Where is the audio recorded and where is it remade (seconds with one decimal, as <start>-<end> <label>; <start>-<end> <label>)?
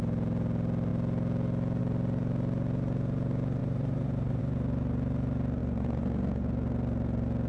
0.0-3.6 recorded; 3.6-4.4 remade; 4.4-7.5 recorded